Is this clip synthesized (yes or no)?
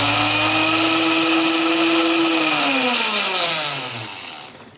no